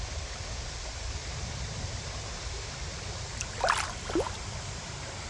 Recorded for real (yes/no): yes